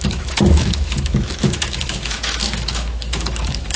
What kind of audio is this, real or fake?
fake